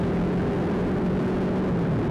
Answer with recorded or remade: recorded